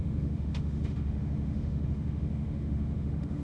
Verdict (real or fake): fake